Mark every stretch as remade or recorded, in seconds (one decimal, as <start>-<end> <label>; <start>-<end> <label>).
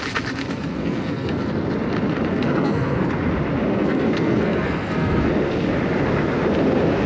0.0-0.4 recorded; 0.4-1.5 remade; 1.5-2.3 recorded; 2.3-3.1 remade; 3.1-3.7 recorded; 3.7-5.3 remade; 5.3-7.1 recorded